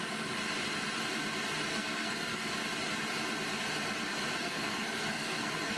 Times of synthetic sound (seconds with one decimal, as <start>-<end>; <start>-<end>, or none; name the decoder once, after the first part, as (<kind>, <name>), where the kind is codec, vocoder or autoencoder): 1.7-2.5 (codec, SNAC); 4.4-5.8